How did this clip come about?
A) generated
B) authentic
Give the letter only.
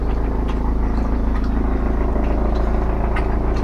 B